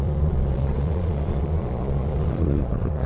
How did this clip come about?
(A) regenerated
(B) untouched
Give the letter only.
A